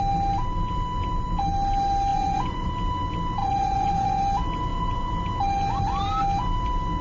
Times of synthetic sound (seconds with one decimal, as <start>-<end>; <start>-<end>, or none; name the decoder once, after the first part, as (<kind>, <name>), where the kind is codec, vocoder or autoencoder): 2.1-2.7 (vocoder, Vocos); 3.4-4.2